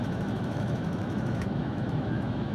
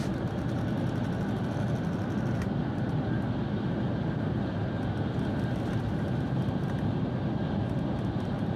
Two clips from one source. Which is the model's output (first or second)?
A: first